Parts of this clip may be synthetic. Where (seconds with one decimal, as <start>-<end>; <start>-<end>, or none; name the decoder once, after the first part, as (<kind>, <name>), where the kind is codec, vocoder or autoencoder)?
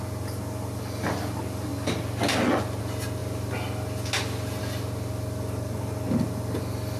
none